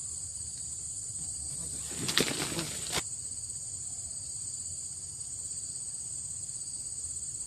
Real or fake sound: real